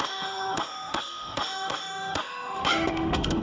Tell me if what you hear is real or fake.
fake